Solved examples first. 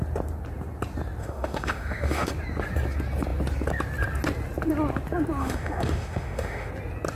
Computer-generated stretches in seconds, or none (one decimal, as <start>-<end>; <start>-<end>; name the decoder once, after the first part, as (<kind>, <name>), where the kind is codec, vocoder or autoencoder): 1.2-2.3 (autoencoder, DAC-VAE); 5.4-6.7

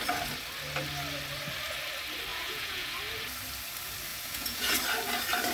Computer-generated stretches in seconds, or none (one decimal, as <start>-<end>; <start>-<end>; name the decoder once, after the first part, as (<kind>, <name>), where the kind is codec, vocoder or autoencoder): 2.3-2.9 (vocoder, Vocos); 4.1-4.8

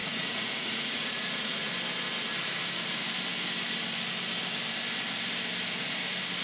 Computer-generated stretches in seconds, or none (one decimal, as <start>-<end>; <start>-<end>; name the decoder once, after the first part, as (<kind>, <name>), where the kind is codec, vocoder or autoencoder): 0.0-1.7 (vocoder, Vocos)

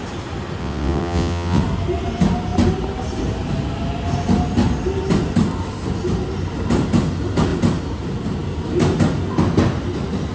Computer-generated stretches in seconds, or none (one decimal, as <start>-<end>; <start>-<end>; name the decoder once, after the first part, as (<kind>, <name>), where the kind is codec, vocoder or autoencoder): 0.6-1.6 (vocoder, WaveNeXt)